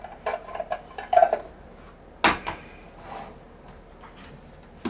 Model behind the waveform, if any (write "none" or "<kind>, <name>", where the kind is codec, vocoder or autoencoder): none